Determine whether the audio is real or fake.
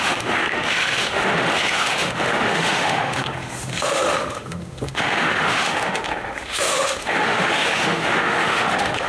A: fake